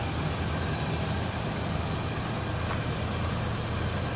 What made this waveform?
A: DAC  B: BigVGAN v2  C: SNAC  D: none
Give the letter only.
D